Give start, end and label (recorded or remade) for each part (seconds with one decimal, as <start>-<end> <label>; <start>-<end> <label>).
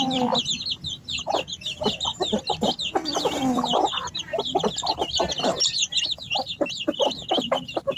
0.0-8.0 recorded